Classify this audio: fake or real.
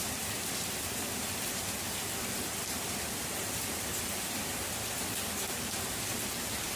fake